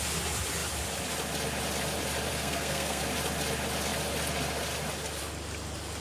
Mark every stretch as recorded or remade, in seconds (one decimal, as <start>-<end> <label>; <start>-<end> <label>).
0.0-2.3 recorded; 2.3-3.0 remade; 3.0-6.0 recorded